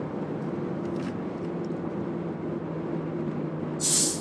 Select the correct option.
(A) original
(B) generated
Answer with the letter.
A